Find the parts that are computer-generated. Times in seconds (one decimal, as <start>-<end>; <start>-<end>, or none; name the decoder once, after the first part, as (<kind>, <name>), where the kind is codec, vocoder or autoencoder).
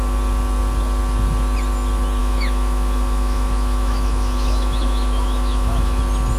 2.2-6.0 (autoencoder, DAC-VAE)